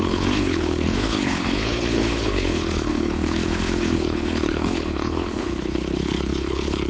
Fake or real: fake